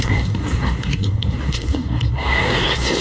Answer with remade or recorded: remade